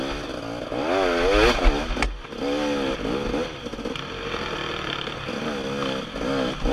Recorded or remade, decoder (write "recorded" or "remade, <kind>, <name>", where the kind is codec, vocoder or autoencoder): recorded